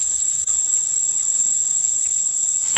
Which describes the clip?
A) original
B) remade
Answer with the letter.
B